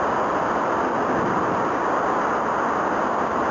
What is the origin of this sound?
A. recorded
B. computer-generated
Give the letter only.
A